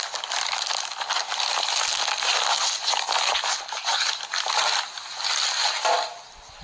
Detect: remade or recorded recorded